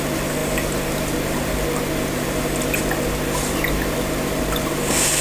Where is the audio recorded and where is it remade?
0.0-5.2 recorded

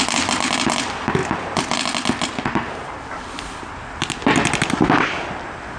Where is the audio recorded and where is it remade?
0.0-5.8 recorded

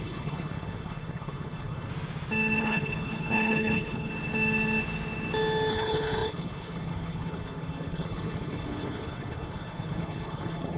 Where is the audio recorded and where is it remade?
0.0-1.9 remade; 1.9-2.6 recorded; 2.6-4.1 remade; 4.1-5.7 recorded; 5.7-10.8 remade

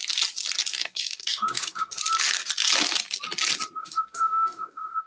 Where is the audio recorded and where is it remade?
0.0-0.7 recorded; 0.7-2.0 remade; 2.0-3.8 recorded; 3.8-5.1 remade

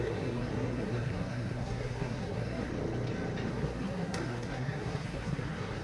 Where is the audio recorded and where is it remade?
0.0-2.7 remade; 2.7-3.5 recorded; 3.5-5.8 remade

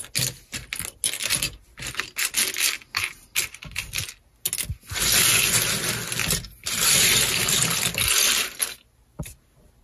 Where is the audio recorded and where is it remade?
0.0-9.8 recorded

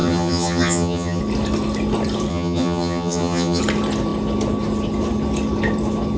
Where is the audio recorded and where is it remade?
0.0-1.2 remade; 1.2-2.3 recorded; 2.3-3.6 remade; 3.6-6.2 recorded